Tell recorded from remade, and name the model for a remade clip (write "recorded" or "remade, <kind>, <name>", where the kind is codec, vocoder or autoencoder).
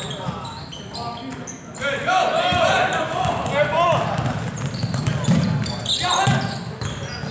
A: recorded